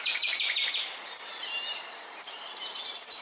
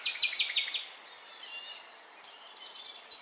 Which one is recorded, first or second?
second